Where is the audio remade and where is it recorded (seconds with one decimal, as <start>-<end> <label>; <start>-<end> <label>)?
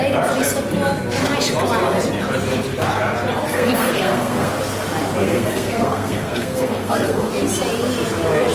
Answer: 0.0-3.5 recorded; 3.5-4.5 remade; 4.5-5.2 recorded; 5.2-7.3 remade; 7.3-8.5 recorded